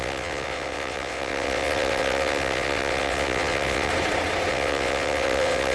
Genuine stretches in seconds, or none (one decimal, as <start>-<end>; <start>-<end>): 3.9-4.5